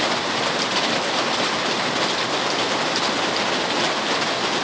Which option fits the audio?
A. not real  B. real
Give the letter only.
B